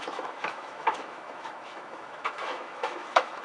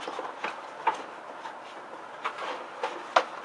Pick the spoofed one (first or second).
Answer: first